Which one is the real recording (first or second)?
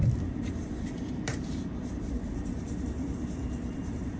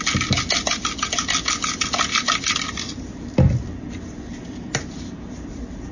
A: second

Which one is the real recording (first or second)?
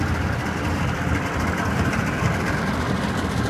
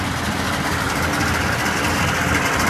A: second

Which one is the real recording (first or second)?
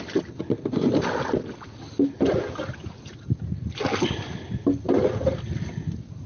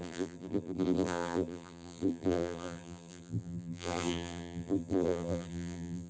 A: first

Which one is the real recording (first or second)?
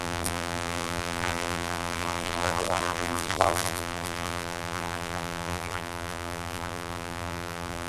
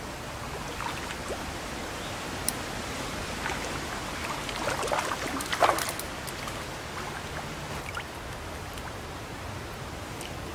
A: second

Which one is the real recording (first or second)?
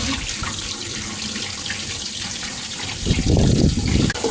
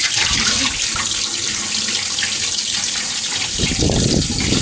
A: second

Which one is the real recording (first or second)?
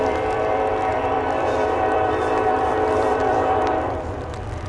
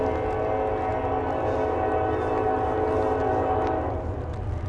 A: second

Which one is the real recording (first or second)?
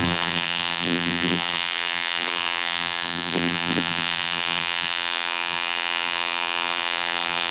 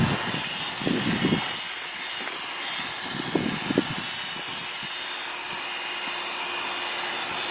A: second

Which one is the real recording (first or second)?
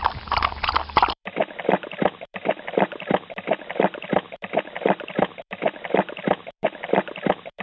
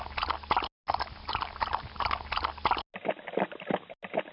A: second